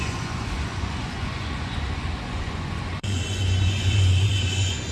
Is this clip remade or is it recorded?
remade